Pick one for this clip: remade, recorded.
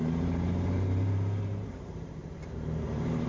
remade